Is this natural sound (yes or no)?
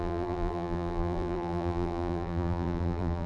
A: no